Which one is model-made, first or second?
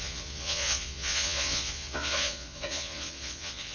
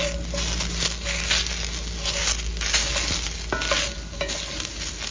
first